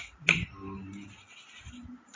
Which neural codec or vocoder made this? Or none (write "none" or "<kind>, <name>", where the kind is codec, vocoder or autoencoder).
none